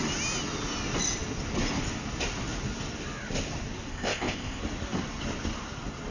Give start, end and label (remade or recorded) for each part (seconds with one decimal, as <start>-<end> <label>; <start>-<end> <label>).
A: 0.0-3.9 recorded; 3.9-4.6 remade; 4.6-6.1 recorded